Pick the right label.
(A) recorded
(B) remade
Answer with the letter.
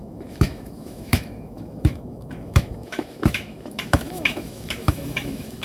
B